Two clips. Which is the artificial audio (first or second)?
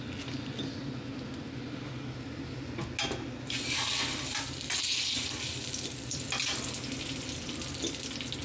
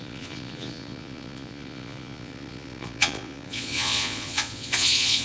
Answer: second